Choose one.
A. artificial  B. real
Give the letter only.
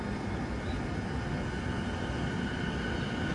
B